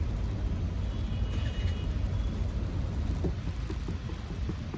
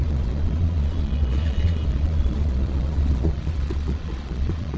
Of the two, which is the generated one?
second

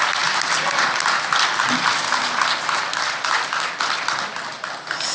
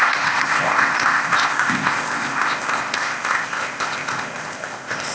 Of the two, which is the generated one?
second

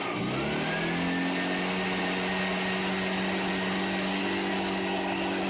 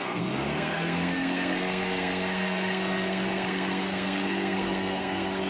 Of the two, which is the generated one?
second